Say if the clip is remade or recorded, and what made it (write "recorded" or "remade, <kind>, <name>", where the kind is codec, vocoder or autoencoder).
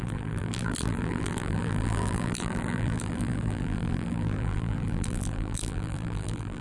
remade, vocoder, BigVGAN v2